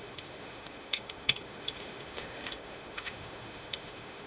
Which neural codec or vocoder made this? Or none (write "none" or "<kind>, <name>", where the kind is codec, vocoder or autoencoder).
autoencoder, DAC-VAE